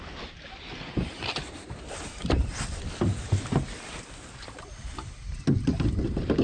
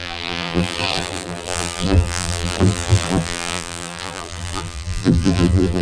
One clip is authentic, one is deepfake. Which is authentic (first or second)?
first